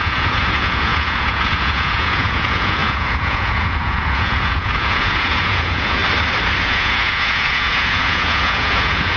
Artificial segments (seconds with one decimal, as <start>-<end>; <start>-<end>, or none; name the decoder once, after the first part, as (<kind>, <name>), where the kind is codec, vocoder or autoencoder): 0.0-6.0 (vocoder, Vocos); 6.6-9.2